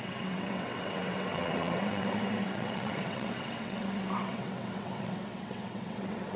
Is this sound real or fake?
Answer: fake